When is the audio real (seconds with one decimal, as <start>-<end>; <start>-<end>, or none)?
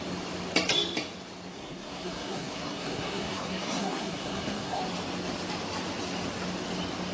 0.0-1.5; 4.8-7.1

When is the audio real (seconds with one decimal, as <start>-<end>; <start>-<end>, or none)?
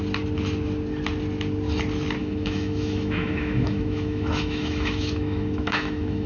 0.0-2.2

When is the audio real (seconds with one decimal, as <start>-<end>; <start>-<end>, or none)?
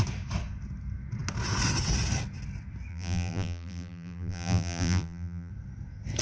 0.0-2.9; 5.5-6.2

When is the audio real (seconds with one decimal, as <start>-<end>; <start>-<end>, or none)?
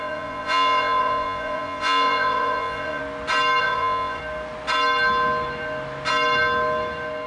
3.0-3.6; 4.2-7.3